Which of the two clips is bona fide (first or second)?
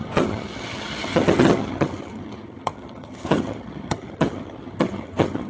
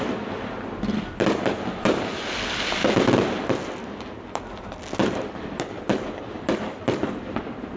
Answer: second